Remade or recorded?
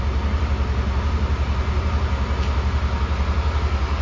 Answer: recorded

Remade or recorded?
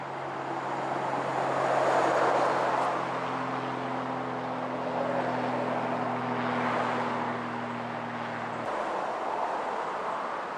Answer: recorded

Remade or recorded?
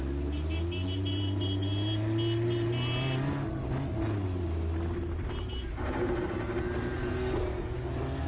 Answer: recorded